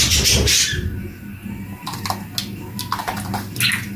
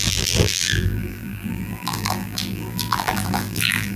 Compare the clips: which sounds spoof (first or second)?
second